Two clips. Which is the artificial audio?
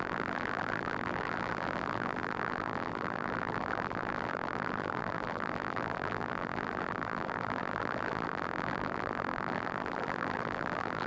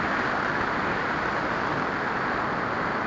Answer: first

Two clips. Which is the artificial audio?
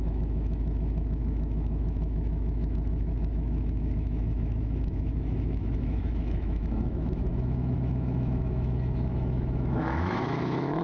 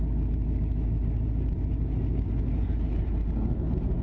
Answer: first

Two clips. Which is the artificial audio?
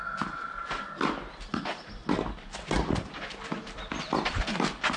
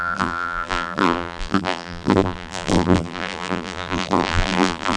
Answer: second